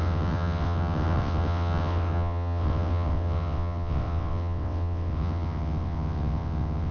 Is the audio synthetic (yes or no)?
yes